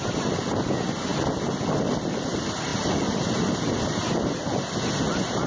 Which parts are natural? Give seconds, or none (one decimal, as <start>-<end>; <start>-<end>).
0.0-2.7; 3.7-5.5